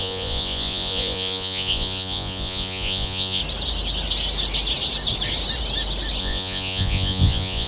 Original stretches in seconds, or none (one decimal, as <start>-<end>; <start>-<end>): 3.4-6.2